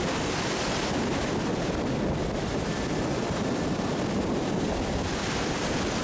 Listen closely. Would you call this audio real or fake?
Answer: real